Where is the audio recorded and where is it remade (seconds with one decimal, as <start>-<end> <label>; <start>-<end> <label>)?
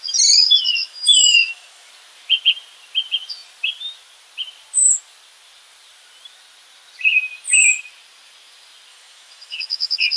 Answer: 0.0-0.8 recorded; 0.8-1.9 remade; 1.9-8.9 recorded; 8.9-10.2 remade